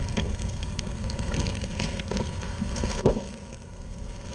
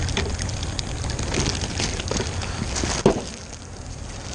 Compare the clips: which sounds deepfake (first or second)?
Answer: first